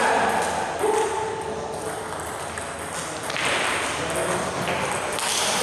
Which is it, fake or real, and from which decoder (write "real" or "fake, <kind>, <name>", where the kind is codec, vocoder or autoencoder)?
real